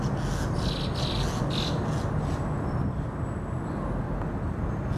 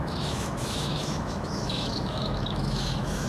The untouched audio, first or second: first